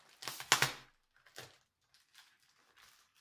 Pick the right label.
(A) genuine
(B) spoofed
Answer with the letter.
A